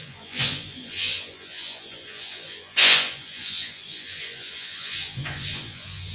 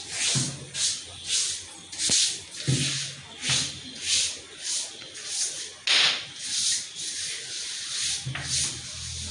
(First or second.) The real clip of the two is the second